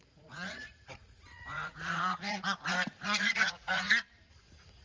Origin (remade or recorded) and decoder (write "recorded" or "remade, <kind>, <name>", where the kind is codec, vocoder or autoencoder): remade, vocoder, Vocos